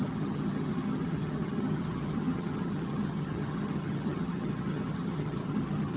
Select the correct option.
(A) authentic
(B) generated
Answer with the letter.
B